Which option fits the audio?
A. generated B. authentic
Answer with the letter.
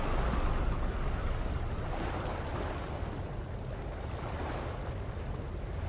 B